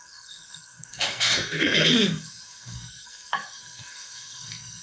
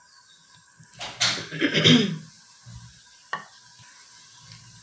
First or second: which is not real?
first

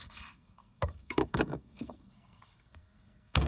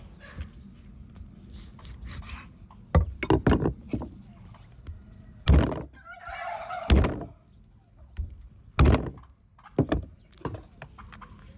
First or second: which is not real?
first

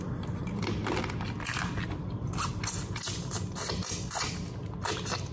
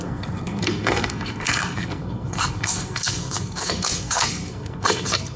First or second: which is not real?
second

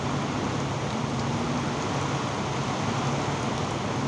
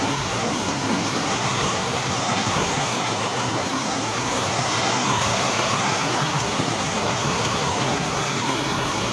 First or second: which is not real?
second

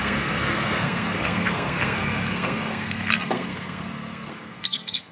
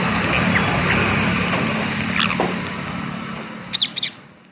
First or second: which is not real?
first